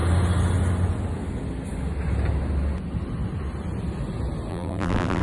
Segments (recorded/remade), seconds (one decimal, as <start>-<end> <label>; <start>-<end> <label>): 0.0-4.5 recorded; 4.5-5.2 remade